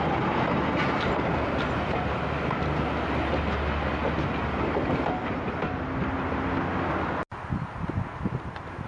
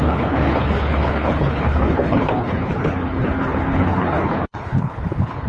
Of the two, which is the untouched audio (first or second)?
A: first